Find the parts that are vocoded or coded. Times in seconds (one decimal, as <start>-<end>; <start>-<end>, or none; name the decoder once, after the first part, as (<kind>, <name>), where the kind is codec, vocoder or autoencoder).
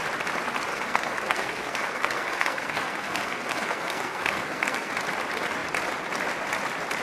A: 0.7-4.9 (codec, SNAC)